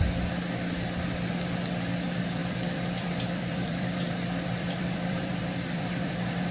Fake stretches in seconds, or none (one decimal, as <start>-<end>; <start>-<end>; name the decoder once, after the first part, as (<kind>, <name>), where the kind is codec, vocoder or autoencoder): 2.4-6.5 (vocoder, BigVGAN v2)